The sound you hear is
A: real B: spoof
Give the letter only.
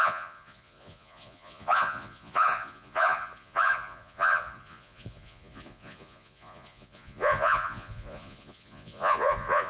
B